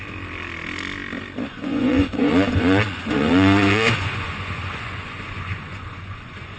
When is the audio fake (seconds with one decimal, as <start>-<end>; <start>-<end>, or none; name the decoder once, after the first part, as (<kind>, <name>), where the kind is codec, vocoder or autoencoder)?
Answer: 1.5-6.6 (vocoder, Vocos)